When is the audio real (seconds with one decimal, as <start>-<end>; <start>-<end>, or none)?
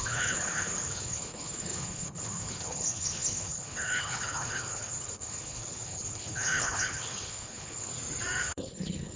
7.9-8.4